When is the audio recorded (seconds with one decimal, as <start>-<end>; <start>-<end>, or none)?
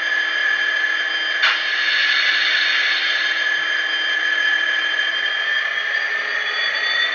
0.0-7.1